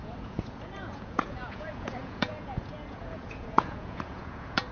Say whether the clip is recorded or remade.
remade